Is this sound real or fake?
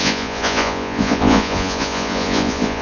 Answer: fake